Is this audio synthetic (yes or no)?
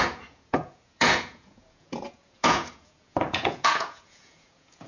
yes